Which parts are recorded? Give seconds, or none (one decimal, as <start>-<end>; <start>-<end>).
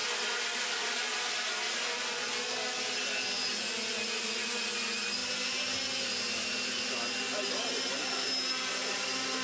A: 0.0-9.4